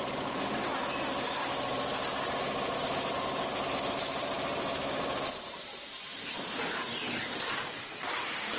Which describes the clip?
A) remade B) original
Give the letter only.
A